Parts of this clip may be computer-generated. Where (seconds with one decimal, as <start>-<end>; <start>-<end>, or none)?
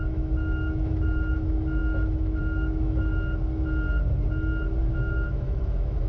0.0-3.1; 4.8-6.1